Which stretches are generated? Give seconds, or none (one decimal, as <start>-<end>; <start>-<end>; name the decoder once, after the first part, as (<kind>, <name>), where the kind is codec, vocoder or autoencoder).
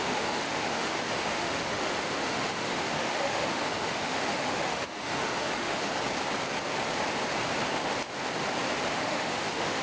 0.0-5.9 (autoencoder, DAC-VAE); 8.9-9.8